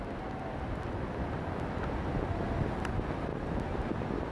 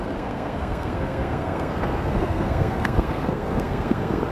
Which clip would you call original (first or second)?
first